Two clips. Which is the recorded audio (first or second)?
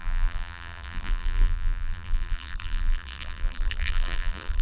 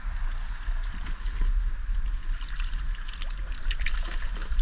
second